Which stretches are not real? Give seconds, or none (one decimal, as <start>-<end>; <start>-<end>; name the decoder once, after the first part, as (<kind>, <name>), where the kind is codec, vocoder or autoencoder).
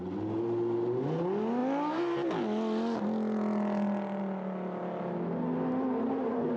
none